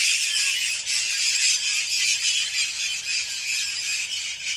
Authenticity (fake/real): real